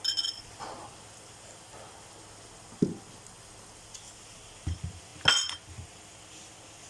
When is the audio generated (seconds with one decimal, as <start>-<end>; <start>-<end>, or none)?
none